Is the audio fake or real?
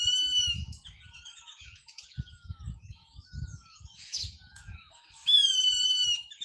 fake